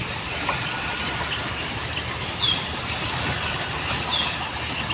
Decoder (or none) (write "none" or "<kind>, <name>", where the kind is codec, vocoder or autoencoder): none